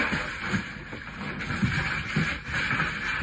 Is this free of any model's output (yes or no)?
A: yes